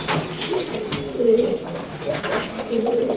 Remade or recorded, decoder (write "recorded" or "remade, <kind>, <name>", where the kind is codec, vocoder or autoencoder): recorded